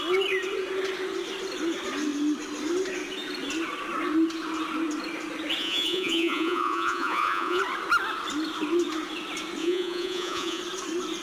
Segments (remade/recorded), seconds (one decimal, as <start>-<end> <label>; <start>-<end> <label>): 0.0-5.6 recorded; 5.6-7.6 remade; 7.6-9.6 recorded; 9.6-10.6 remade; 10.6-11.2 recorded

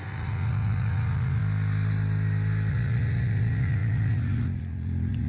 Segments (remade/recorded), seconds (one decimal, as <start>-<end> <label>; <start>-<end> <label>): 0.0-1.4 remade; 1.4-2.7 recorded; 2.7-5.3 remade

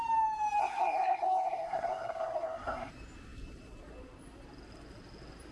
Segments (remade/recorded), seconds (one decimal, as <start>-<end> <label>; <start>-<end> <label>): 0.0-0.6 recorded; 0.6-2.9 remade; 2.9-5.5 recorded

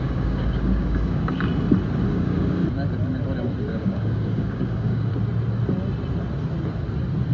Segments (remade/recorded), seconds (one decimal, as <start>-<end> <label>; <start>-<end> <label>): 0.0-1.5 remade; 1.5-2.1 recorded; 2.1-2.6 remade; 2.6-3.7 recorded; 3.7-5.1 remade; 5.1-7.3 recorded

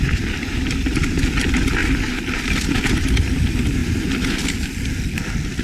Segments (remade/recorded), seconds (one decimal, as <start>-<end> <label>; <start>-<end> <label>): 0.0-5.6 recorded

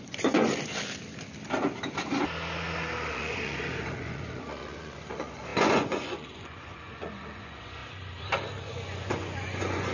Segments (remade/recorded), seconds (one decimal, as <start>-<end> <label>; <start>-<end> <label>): 0.0-0.5 remade; 0.5-3.1 recorded; 3.1-7.8 remade; 7.8-8.6 recorded; 8.6-9.9 remade